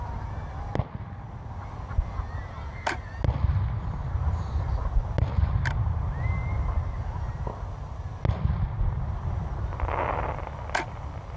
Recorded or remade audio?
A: recorded